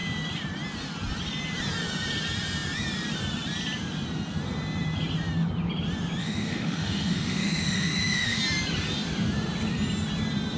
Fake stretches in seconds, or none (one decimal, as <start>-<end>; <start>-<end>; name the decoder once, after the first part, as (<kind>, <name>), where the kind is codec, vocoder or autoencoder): 6.2-8.4 (autoencoder, DAC-VAE)